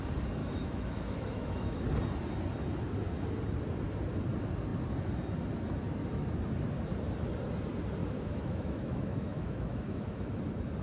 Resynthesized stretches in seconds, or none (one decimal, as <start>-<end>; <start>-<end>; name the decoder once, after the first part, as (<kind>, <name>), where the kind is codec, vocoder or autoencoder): 0.4-1.8 (autoencoder, DAC-VAE); 8.0-10.4